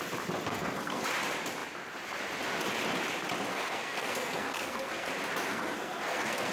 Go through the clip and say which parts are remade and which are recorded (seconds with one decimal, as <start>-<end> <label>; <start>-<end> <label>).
0.0-0.5 recorded; 0.5-1.0 remade; 1.0-3.5 recorded; 3.5-5.1 remade; 5.1-5.5 recorded; 5.5-6.5 remade